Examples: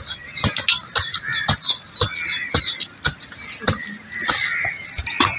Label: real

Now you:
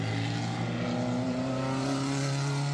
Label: real